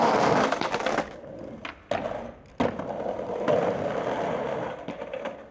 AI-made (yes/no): no